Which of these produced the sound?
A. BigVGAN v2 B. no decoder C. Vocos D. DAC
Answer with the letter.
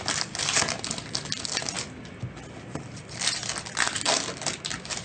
B